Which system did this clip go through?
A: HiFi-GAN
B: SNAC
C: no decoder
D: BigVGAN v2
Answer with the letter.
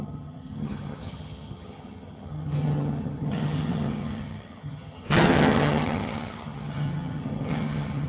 A